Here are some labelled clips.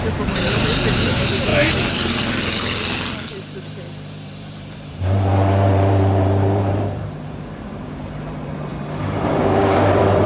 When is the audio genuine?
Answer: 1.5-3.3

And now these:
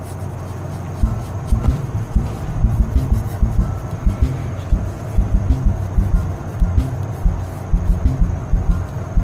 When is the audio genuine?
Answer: 0.0-1.2; 3.2-4.4; 5.1-9.2

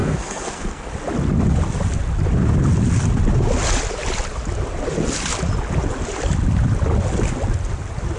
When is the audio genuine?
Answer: 0.8-8.2

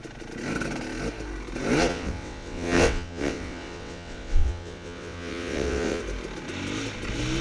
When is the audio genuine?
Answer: 0.0-1.9; 6.0-7.4